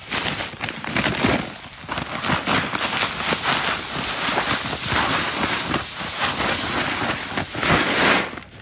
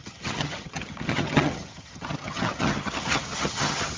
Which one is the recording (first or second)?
first